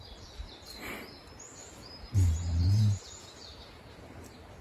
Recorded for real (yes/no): no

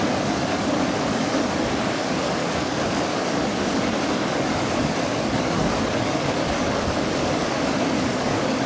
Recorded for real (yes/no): no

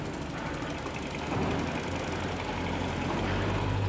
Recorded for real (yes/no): yes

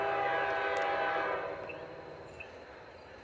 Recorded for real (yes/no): yes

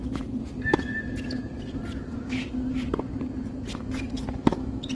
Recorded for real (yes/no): yes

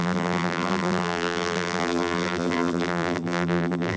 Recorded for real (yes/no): no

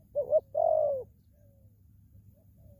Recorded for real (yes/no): yes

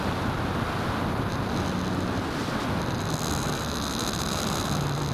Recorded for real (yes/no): yes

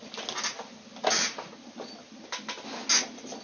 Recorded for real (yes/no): yes